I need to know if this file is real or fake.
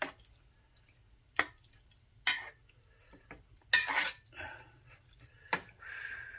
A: real